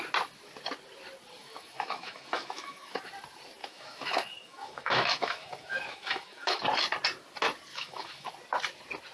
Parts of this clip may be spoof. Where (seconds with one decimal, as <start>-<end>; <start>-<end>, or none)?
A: 1.4-3.1; 3.6-6.6; 7.7-8.3